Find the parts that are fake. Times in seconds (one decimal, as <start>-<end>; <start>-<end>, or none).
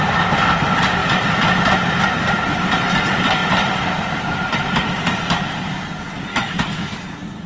6.3-6.9